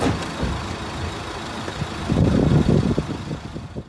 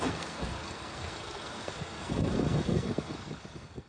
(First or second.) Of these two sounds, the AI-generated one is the second